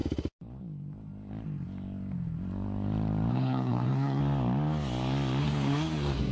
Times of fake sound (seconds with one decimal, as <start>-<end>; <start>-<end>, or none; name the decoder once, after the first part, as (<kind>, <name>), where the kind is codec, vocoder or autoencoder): 3.3-4.2 (codec, SNAC); 5.4-6.3